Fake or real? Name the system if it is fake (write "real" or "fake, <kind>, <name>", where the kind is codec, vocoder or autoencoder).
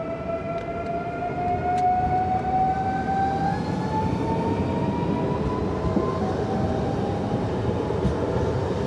real